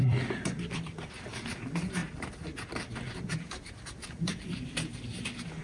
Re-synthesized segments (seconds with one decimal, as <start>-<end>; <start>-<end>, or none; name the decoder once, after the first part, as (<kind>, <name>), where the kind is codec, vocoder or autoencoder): 0.0-2.0 (vocoder, BigVGAN v2); 2.7-5.6